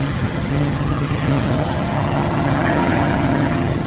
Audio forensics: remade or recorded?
remade